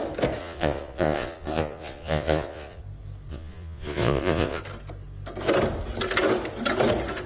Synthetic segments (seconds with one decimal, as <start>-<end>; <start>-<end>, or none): 0.4-2.8; 3.3-4.6